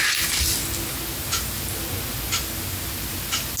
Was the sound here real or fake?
real